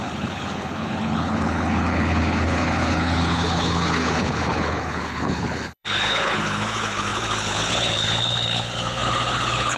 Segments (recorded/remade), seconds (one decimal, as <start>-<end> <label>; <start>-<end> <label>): 0.0-9.8 remade